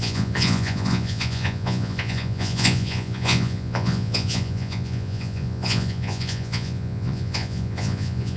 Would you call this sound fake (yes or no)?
yes